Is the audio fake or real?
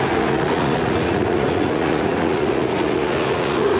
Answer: fake